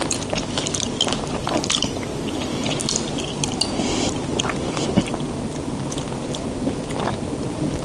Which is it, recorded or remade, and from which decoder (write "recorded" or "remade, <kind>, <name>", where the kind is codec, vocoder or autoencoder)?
recorded